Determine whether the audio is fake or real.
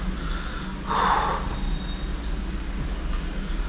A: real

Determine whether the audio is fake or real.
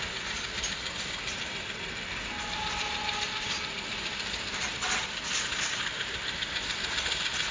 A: real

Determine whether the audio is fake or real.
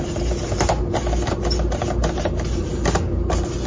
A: real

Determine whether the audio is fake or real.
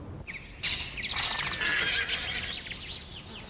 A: real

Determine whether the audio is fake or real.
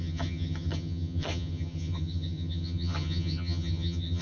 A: fake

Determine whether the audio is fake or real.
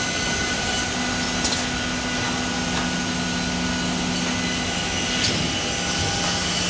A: real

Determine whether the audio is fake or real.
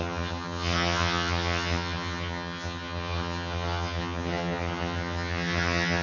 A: fake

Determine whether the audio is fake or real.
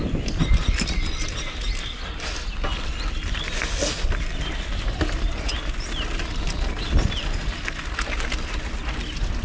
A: real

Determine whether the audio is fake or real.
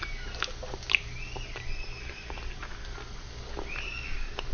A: real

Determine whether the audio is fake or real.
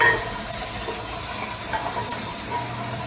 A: real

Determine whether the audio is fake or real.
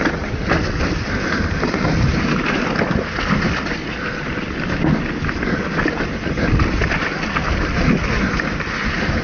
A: real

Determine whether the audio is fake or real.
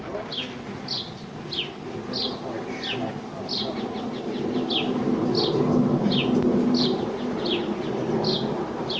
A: real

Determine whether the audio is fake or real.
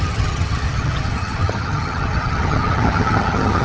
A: fake